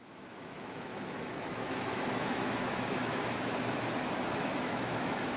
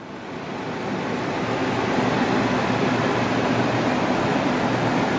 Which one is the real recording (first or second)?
second